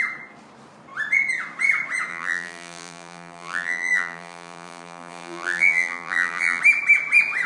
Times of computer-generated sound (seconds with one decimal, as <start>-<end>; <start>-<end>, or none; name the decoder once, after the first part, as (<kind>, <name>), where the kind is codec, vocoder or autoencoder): 2.1-6.6 (vocoder, BigVGAN v2)